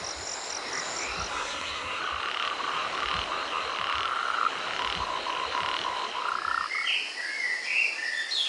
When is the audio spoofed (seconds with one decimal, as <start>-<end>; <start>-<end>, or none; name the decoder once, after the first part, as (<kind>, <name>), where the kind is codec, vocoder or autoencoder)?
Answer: 1.3-2.0 (codec, SNAC)